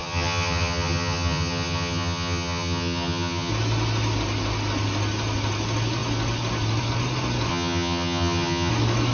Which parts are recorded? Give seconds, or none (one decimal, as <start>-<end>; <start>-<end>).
3.5-7.5; 8.7-9.1